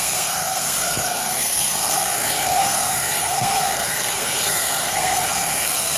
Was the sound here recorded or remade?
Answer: remade